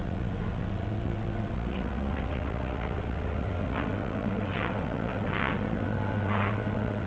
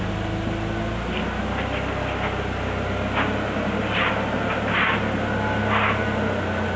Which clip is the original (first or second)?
second